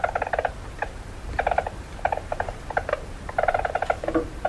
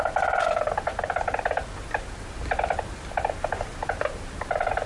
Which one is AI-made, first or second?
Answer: first